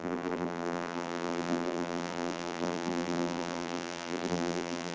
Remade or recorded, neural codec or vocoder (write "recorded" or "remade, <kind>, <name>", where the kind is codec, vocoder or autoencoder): remade, vocoder, BigVGAN v2